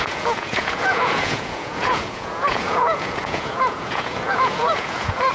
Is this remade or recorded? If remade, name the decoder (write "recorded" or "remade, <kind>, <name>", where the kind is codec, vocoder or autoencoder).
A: remade, vocoder, Vocos